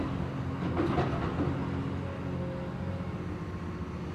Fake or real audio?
real